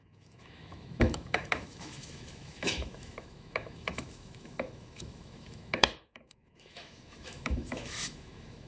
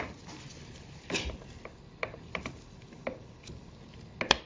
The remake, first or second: first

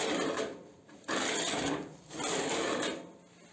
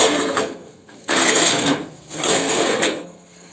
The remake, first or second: second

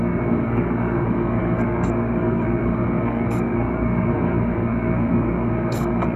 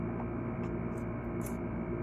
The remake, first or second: first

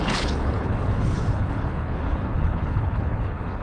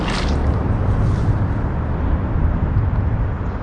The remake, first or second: first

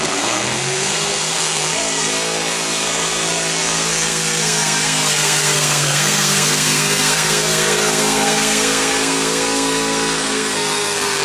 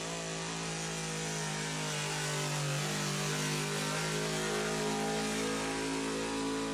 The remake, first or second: first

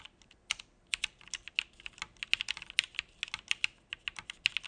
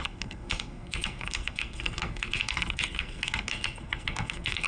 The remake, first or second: second